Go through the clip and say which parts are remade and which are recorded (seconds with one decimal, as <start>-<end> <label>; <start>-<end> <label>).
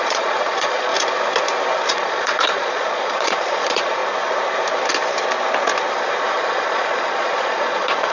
0.0-0.9 remade; 0.9-1.9 recorded; 1.9-4.0 remade; 4.0-6.3 recorded; 6.3-8.1 remade